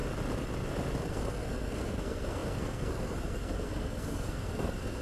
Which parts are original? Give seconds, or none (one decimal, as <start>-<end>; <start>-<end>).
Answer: 0.0-1.1